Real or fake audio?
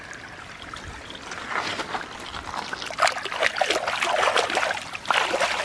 real